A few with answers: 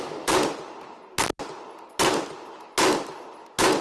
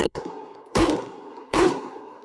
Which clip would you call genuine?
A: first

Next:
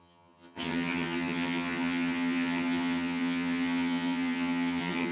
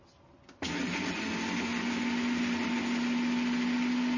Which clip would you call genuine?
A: second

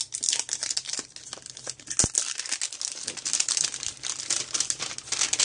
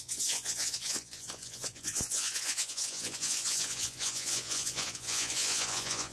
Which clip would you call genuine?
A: first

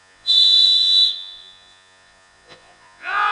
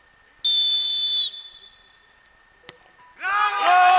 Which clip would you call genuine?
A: second